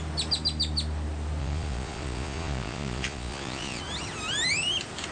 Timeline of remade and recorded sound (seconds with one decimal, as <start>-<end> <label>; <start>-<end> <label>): 0.0-1.4 recorded; 1.4-3.8 remade; 3.8-5.1 recorded